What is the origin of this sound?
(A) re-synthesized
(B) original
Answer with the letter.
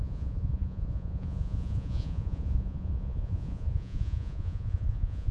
A